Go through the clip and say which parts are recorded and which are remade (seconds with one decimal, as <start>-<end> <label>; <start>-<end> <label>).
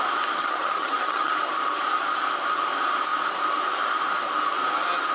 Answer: 0.0-0.4 recorded; 0.4-1.4 remade; 1.4-5.1 recorded